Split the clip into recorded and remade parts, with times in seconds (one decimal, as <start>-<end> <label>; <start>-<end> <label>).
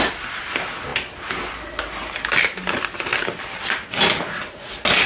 0.0-5.1 recorded